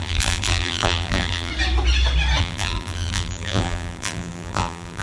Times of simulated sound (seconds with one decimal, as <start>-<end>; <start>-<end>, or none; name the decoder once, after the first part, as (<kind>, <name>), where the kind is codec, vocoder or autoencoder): 0.0-1.5 (vocoder, BigVGAN v2); 2.4-5.0